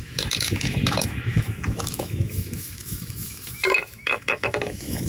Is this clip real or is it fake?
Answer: fake